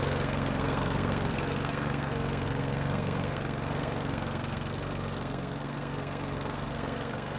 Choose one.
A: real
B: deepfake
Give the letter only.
B